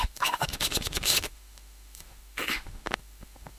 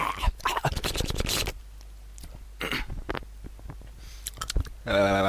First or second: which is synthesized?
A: first